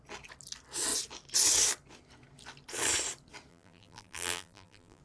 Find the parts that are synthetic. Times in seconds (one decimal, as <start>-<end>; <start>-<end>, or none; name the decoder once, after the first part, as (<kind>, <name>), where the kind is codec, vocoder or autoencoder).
3.5-5.0 (vocoder, BigVGAN v2)